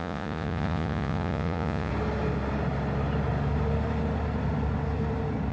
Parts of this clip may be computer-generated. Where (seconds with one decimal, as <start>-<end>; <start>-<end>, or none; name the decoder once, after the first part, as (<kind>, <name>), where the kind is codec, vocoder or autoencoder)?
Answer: 0.0-1.9 (vocoder, Vocos)